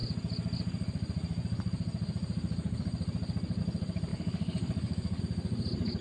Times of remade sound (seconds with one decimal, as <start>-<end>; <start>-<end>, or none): 4.1-5.2